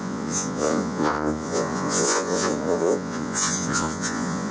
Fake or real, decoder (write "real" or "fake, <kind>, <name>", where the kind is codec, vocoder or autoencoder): fake, vocoder, Vocos